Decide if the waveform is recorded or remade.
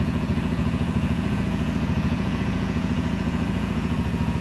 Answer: remade